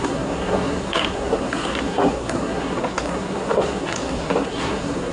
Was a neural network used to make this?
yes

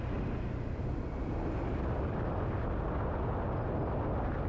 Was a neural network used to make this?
no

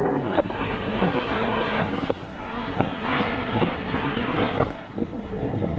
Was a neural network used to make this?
yes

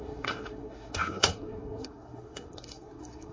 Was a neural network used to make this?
yes